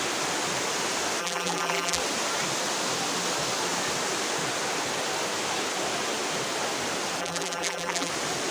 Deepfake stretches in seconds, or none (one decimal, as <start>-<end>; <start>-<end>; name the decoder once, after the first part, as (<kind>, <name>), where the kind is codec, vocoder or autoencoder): 1.2-2.0 (vocoder, BigVGAN v2); 7.2-8.1